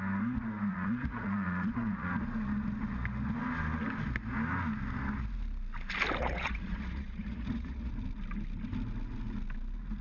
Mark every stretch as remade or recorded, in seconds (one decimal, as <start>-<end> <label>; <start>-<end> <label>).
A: 0.0-0.7 recorded; 0.7-2.1 remade; 2.1-6.2 recorded; 6.2-7.9 remade; 7.9-10.0 recorded